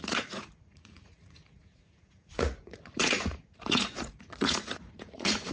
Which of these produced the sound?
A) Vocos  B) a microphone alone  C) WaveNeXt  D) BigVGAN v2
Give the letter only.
A